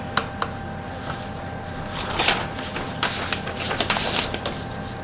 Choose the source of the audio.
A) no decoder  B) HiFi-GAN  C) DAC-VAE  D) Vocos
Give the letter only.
A